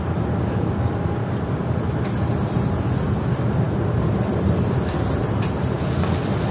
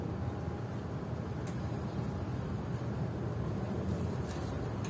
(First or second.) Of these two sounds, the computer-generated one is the first